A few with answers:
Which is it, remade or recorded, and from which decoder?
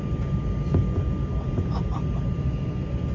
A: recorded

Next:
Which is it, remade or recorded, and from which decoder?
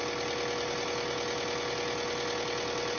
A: recorded